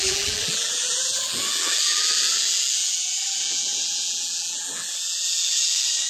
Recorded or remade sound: remade